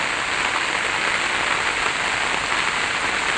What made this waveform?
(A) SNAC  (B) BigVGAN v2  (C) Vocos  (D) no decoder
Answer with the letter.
D